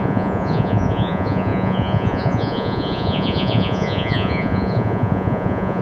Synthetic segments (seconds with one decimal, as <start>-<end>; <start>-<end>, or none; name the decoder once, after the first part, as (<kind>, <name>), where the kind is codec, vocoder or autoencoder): 0.0-5.8 (vocoder, Vocos)